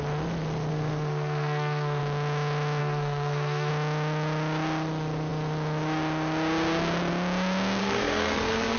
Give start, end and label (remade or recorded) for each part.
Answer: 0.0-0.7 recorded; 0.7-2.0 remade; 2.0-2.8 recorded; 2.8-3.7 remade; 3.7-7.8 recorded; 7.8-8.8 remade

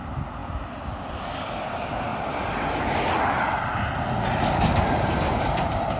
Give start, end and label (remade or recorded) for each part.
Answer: 0.0-6.0 recorded